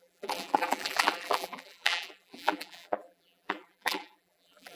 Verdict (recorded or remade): remade